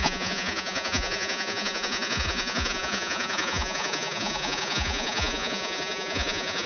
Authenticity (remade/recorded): remade